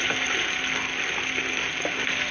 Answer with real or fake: real